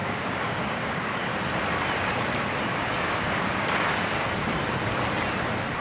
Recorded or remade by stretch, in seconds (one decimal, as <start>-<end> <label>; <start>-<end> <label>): 0.0-1.3 remade; 1.3-2.7 recorded; 2.7-4.3 remade; 4.3-5.8 recorded